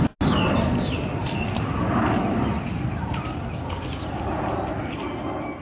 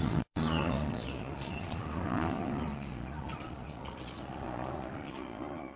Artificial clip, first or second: second